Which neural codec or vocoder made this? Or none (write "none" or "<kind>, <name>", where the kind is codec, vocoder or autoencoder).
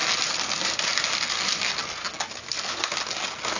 none